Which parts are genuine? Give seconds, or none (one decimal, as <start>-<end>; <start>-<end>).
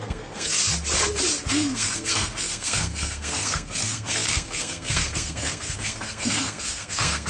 0.6-1.5